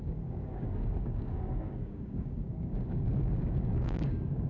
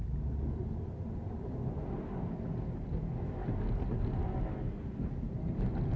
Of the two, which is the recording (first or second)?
second